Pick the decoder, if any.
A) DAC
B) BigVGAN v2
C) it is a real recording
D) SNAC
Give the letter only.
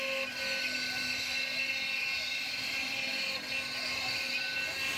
C